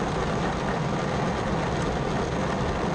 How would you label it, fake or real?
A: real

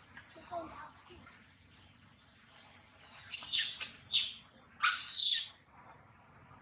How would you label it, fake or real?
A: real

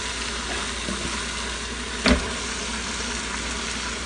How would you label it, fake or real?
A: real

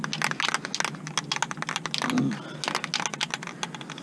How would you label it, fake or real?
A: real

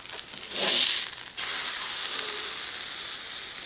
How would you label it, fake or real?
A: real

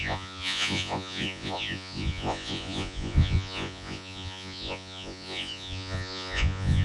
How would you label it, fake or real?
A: fake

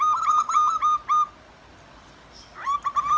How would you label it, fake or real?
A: real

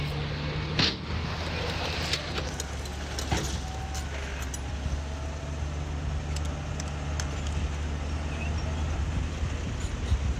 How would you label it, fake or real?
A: real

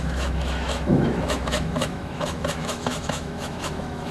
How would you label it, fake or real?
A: fake